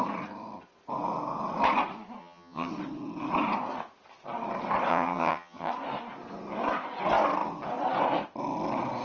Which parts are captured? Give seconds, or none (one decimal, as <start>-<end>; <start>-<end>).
0.0-2.2; 2.7-4.9; 5.7-9.0